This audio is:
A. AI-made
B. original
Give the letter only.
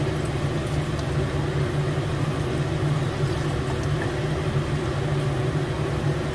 B